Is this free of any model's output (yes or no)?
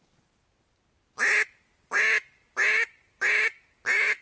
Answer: yes